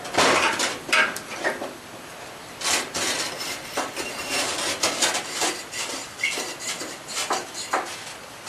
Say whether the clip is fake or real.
fake